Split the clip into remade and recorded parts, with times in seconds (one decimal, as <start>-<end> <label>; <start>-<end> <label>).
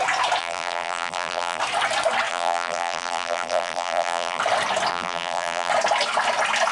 0.0-0.4 recorded; 0.4-1.6 remade; 1.6-2.3 recorded; 2.3-4.4 remade; 4.4-4.9 recorded; 4.9-5.7 remade; 5.7-6.7 recorded